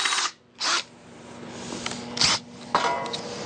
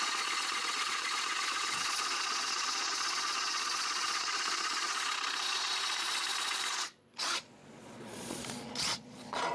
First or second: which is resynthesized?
second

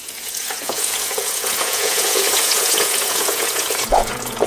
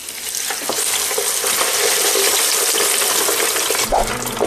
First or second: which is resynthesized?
first